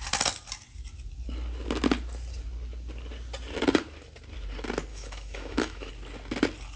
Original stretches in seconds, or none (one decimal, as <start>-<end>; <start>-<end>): 0.0-4.9; 5.9-6.8